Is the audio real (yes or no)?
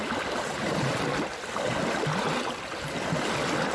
yes